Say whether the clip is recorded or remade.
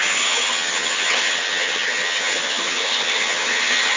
remade